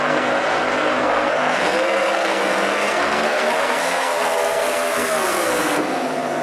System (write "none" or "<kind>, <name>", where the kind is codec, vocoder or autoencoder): codec, SNAC